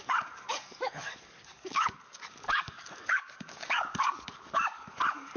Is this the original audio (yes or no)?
no